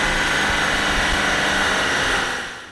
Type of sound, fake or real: real